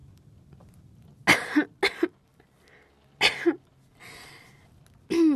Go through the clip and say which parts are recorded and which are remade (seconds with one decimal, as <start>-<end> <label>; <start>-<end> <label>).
0.0-5.4 recorded